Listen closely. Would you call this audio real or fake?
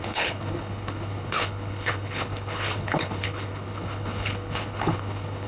fake